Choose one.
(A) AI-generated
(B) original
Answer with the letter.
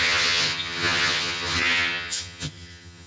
A